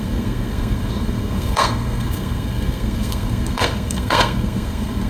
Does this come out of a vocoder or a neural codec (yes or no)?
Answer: yes